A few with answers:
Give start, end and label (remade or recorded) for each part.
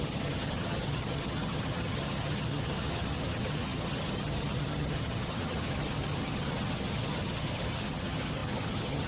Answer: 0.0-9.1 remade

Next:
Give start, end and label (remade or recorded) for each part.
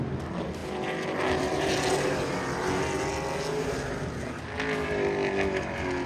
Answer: 0.0-6.1 recorded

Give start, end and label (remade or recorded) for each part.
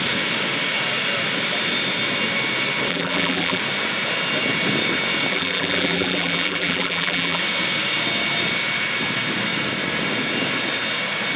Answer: 0.0-2.9 recorded; 2.9-3.6 remade; 3.6-5.3 recorded; 5.3-7.4 remade; 7.4-11.4 recorded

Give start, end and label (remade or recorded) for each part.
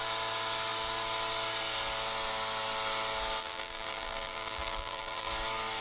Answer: 0.0-3.4 recorded; 3.4-5.3 remade; 5.3-5.8 recorded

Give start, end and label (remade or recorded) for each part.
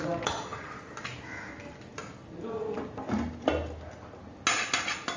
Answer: 0.0-5.2 recorded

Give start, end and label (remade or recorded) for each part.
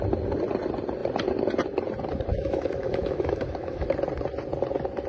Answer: 0.0-2.3 recorded; 2.3-3.9 remade; 3.9-5.1 recorded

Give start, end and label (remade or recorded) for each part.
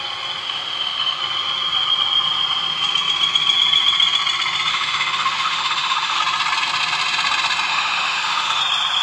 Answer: 0.0-0.4 recorded; 0.4-1.2 remade; 1.2-4.7 recorded; 4.7-6.2 remade; 6.2-7.7 recorded; 7.7-8.6 remade; 8.6-9.0 recorded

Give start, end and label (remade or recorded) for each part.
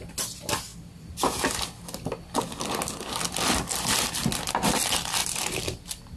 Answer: 0.0-6.2 recorded